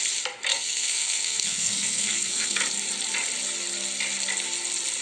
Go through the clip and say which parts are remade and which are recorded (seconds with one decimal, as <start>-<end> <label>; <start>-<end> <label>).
0.0-0.5 recorded; 0.5-2.6 remade; 2.6-5.0 recorded